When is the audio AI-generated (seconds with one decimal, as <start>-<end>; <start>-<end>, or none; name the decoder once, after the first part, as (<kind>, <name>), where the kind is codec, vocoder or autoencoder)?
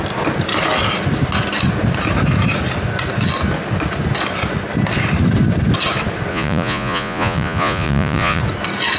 6.3-8.4 (vocoder, Vocos)